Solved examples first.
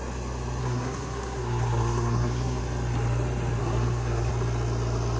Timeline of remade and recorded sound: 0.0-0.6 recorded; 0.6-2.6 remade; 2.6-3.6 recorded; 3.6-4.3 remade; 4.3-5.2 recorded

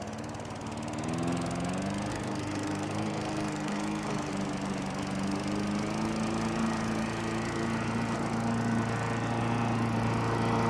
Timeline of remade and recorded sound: 0.0-2.1 recorded; 2.1-4.3 remade; 4.3-10.7 recorded

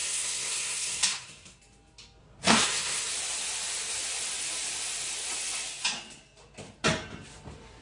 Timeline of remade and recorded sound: 0.0-1.6 remade; 1.6-2.2 recorded; 2.2-3.1 remade; 3.1-7.8 recorded

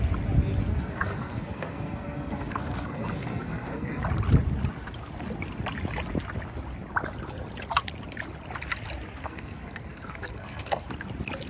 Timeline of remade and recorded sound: 0.0-0.7 recorded; 0.7-4.0 remade; 4.0-9.2 recorded; 9.2-10.8 remade; 10.8-11.5 recorded

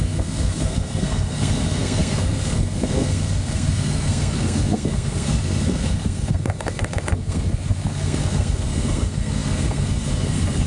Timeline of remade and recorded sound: 0.0-10.7 remade

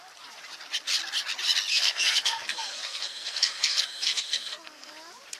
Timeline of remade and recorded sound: 0.0-1.7 recorded; 1.7-4.9 remade; 4.9-5.4 recorded

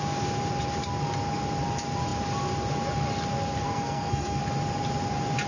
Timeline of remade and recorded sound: 0.0-3.6 recorded; 3.6-4.4 remade; 4.4-5.5 recorded